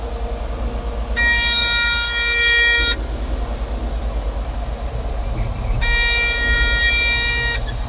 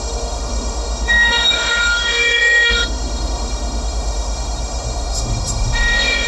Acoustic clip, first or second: first